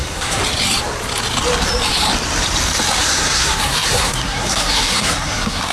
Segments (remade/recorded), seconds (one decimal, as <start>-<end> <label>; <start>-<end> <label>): 0.0-0.4 remade; 0.4-3.0 recorded; 3.0-5.7 remade